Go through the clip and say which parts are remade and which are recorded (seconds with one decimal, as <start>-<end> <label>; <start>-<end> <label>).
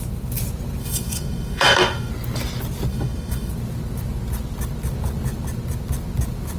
0.0-0.8 recorded; 0.8-2.1 remade; 2.1-2.9 recorded; 2.9-3.5 remade; 3.5-6.6 recorded